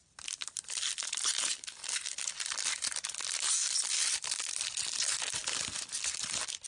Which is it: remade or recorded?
recorded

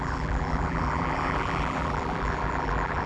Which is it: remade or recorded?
remade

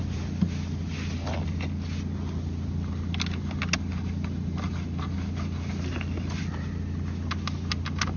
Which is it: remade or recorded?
recorded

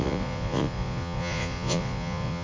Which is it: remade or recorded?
remade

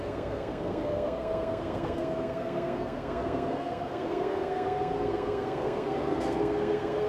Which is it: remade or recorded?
remade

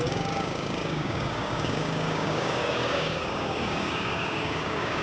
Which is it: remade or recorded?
remade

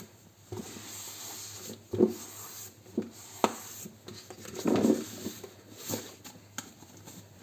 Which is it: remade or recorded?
recorded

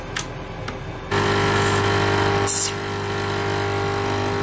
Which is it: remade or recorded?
recorded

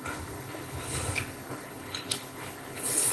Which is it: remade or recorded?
remade